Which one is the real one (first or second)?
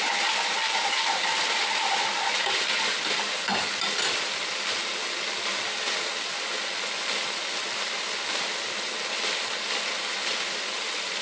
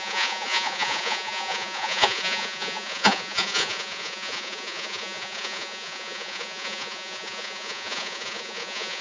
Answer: first